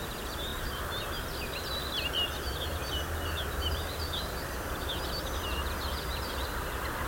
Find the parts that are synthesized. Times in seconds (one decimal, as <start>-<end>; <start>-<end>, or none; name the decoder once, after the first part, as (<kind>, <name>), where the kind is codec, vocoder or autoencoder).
none